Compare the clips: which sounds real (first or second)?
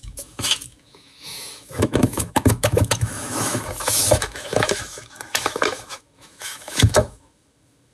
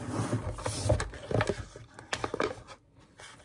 second